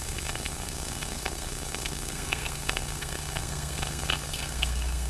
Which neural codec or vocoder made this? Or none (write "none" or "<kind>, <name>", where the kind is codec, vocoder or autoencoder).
codec, SNAC